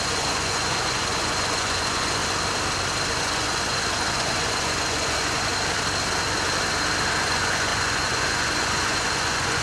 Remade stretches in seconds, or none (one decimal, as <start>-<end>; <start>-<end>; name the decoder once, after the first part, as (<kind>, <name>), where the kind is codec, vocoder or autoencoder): 0.0-2.2 (vocoder, Vocos); 3.1-5.5; 7.2-9.6